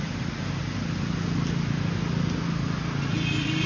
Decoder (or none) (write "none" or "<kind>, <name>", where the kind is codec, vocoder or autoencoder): none